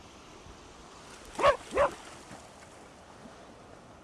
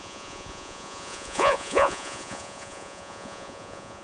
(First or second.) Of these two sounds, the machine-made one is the second